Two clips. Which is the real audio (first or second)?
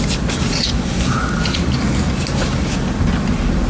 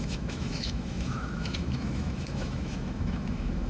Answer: first